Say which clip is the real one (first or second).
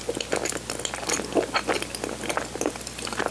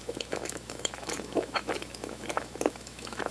first